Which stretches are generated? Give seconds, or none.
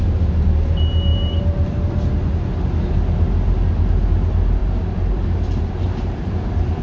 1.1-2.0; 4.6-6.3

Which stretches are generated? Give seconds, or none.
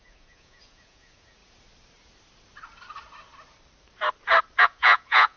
0.0-1.4; 4.6-5.4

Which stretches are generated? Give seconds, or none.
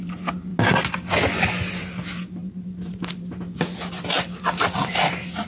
2.4-3.0